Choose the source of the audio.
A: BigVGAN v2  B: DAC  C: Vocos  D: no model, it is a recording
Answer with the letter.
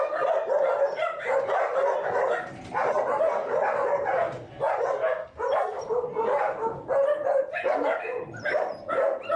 D